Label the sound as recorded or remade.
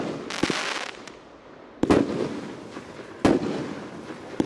recorded